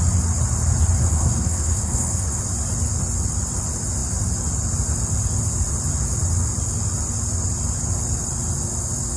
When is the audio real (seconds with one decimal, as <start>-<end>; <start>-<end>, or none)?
0.0-1.0; 2.4-9.2